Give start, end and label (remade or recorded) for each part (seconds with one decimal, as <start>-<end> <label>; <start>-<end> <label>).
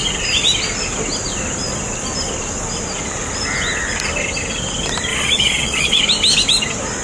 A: 0.0-5.1 recorded; 5.1-6.0 remade; 6.0-7.0 recorded